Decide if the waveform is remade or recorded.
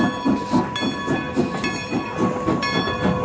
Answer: recorded